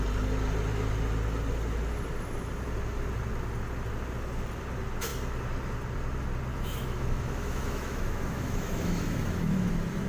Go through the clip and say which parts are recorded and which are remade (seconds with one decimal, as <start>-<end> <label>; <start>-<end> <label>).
0.0-6.5 recorded; 6.5-9.7 remade; 9.7-10.1 recorded

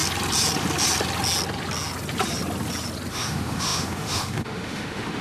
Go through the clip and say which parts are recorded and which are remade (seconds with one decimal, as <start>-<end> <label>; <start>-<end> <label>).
0.0-3.1 recorded; 3.1-5.2 remade

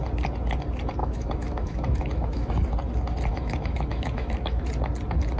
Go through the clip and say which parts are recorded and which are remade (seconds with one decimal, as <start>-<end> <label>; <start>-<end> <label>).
0.0-1.0 recorded; 1.0-2.5 remade; 2.5-3.3 recorded; 3.3-4.7 remade; 4.7-5.4 recorded

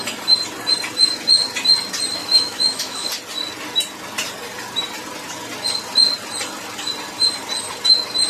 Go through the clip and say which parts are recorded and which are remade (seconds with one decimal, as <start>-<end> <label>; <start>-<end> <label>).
0.0-2.2 recorded; 2.2-3.1 remade; 3.1-8.3 recorded